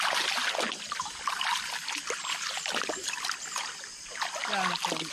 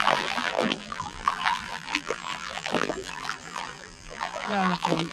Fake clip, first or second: second